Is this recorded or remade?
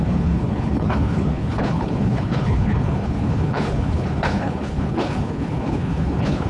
remade